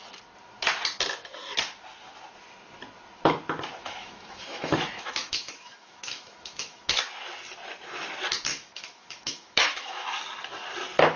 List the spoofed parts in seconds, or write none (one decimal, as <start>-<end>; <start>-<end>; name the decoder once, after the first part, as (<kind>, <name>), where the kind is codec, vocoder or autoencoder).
3.8-7.0 (autoencoder, DAC-VAE); 8.5-10.2